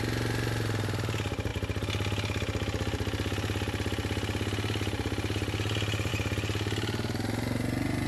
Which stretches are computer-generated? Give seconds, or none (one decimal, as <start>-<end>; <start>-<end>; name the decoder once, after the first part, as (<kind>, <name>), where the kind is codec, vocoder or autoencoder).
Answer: none